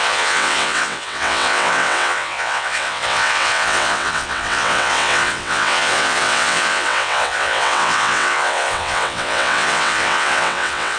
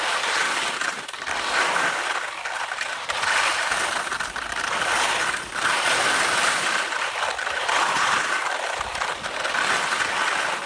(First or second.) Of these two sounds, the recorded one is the second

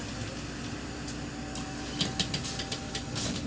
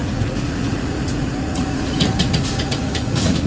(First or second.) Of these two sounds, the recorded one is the first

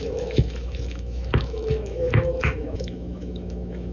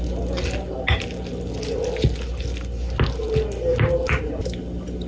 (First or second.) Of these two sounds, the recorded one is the second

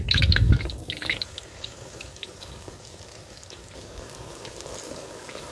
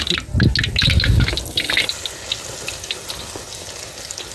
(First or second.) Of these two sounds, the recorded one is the second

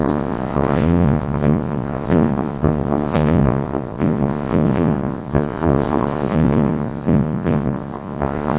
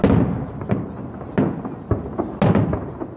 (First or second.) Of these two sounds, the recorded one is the second